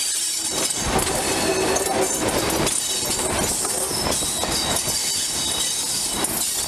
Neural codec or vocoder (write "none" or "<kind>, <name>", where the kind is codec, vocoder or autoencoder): none